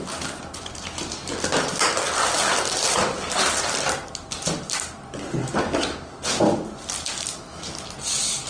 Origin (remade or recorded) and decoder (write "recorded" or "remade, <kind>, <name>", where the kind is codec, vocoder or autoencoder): recorded